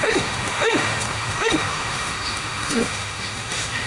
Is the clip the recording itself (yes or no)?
no